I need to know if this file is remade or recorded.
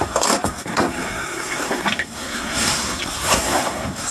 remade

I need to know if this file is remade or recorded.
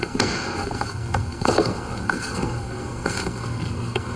remade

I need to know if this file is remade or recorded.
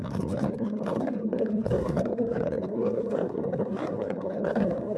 remade